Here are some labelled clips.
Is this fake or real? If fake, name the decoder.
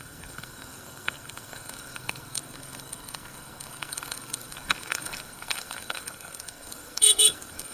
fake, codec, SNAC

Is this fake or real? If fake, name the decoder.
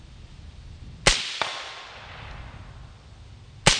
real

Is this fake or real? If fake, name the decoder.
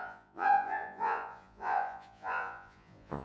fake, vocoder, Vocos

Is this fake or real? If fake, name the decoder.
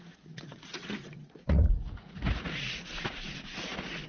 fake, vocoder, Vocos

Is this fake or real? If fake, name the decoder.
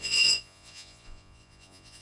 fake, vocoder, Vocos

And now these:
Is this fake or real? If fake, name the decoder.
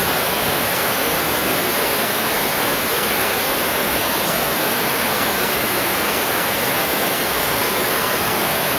fake, codec, SNAC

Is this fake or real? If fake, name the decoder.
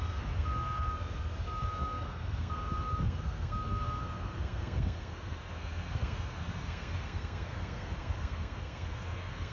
fake, codec, SNAC